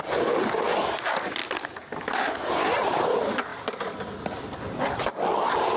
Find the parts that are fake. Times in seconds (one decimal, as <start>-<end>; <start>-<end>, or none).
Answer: 3.5-4.1